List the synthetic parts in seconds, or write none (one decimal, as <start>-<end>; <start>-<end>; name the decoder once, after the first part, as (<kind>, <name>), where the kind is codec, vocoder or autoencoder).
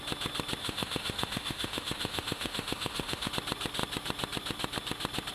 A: 0.6-3.3 (autoencoder, DAC-VAE)